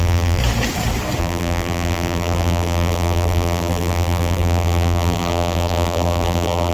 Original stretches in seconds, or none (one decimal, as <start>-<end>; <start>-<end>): 0.4-1.2